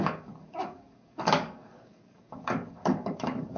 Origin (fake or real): fake